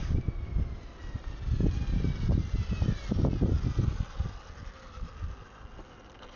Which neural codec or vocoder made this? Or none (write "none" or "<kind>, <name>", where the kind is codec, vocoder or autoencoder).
none